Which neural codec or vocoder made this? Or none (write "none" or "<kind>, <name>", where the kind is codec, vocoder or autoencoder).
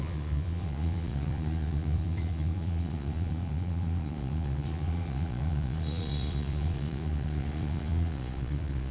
vocoder, Vocos